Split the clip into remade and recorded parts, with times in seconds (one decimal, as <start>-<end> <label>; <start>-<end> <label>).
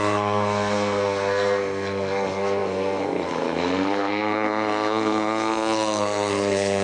0.0-6.8 remade